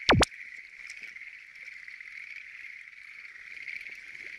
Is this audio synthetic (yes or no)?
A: no